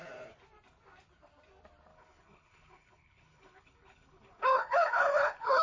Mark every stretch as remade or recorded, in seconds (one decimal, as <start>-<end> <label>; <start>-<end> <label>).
0.0-1.9 recorded; 1.9-5.6 remade